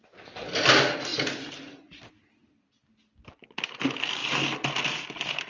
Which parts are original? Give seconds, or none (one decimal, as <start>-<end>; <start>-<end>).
0.0-5.5

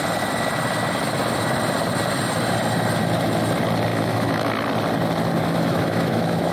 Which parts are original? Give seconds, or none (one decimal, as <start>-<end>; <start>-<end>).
0.0-3.9; 4.5-5.4

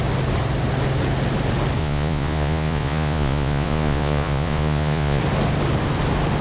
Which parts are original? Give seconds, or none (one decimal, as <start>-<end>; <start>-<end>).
0.0-1.8; 5.2-6.4

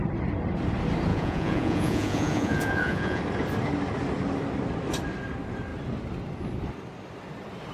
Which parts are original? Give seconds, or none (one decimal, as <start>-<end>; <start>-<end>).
0.0-1.1; 3.2-7.7

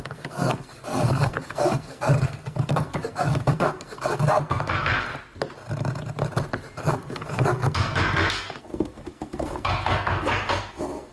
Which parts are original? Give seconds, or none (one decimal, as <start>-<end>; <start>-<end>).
5.1-6.8